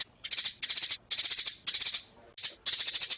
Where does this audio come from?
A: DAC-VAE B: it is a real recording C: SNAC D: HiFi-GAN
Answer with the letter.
B